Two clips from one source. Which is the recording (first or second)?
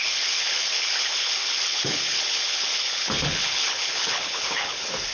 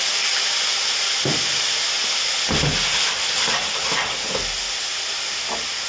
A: second